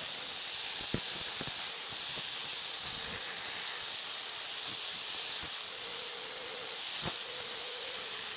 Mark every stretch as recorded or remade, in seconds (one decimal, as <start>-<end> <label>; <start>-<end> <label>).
0.0-8.4 recorded